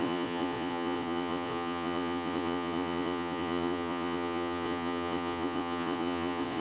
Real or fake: fake